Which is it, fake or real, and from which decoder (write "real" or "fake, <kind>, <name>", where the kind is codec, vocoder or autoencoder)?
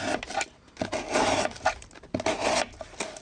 fake, vocoder, BigVGAN v2